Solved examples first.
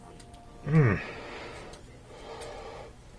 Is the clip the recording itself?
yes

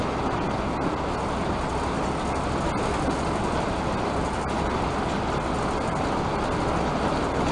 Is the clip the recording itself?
yes